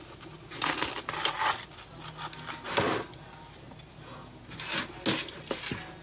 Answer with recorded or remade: recorded